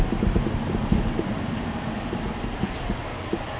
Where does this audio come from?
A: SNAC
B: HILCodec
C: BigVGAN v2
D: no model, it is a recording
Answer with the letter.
C